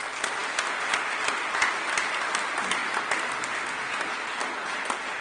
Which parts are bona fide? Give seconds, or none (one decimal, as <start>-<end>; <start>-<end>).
0.0-5.2